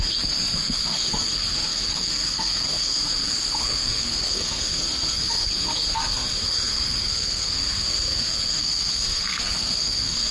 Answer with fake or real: fake